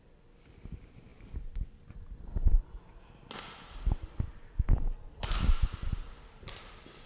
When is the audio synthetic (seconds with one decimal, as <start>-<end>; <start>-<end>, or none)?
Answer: none